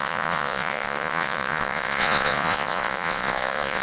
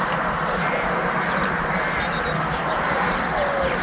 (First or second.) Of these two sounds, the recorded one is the second